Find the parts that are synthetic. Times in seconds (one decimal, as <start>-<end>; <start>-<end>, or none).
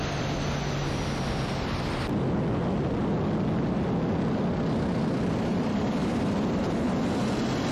none